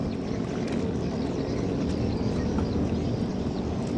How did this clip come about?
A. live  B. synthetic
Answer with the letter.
A